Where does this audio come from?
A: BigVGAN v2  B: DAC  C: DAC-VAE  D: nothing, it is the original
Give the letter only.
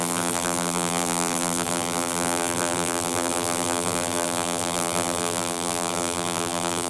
A